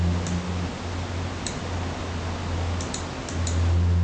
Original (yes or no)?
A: yes